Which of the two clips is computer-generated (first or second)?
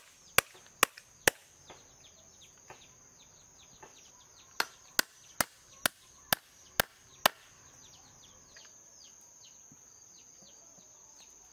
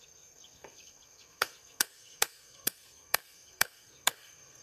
second